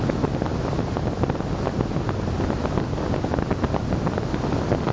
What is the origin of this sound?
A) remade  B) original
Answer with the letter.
B